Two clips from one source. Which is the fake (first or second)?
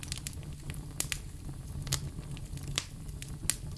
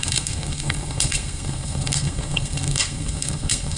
second